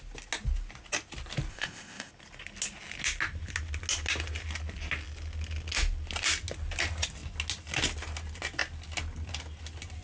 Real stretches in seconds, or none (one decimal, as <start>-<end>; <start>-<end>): 0.0-1.5; 2.1-10.0